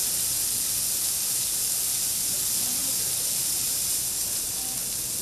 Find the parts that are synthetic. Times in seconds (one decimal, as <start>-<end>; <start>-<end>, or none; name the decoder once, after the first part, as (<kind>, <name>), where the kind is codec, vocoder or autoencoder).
2.8-4.6 (vocoder, BigVGAN v2)